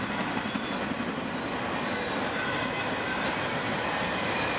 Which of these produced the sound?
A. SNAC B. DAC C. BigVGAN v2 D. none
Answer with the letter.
D